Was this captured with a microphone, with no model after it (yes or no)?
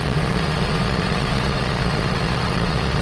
no